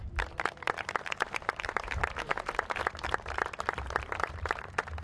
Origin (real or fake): fake